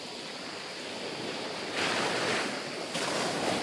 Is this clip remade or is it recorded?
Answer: recorded